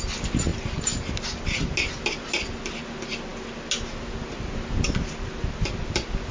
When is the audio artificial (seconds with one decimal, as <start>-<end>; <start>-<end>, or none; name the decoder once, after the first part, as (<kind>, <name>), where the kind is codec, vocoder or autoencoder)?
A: none

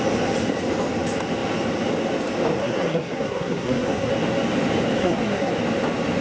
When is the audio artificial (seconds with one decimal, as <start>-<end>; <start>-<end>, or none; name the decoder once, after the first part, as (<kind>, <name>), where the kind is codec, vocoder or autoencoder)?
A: 2.6-4.1 (codec, SNAC); 5.0-5.5

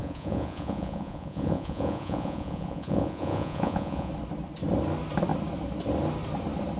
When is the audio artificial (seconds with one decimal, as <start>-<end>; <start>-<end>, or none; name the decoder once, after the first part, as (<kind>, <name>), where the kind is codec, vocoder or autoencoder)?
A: 0.0-4.1 (vocoder, Vocos)

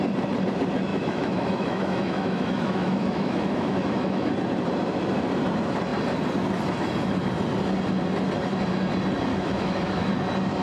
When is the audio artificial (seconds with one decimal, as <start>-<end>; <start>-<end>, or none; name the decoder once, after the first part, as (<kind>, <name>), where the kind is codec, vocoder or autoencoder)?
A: 0.9-4.3 (autoencoder, DAC-VAE); 9.3-10.1

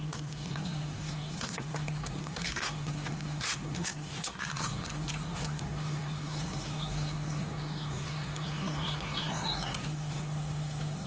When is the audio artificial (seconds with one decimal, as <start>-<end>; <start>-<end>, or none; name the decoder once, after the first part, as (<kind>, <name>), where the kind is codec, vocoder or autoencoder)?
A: 0.0-11.1 (codec, SNAC)

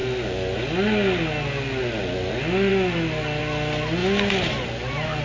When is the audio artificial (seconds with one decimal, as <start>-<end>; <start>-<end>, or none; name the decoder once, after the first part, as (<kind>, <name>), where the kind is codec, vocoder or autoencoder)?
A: none

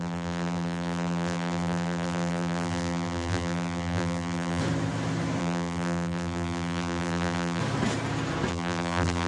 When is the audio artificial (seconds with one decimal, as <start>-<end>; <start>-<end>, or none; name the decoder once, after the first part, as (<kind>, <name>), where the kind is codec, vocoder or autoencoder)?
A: 0.0-4.6 (vocoder, BigVGAN v2); 5.4-7.6; 8.5-9.3